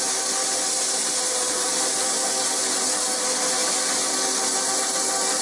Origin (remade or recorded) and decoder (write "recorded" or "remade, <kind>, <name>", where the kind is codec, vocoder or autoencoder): recorded